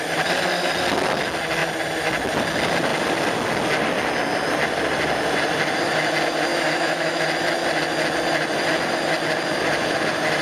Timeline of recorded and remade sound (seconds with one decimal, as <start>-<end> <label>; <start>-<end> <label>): 0.0-6.5 recorded; 6.5-7.2 remade; 7.2-10.4 recorded